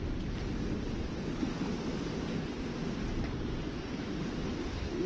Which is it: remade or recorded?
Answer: recorded